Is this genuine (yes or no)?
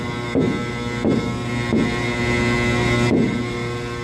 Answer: yes